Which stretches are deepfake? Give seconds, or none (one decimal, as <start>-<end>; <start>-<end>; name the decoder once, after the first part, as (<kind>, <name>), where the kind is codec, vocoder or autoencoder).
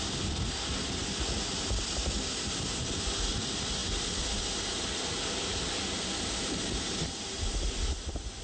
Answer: none